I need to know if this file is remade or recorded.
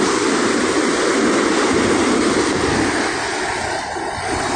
recorded